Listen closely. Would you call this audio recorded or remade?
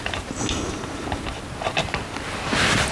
recorded